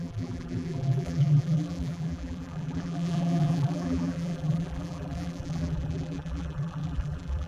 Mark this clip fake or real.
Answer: fake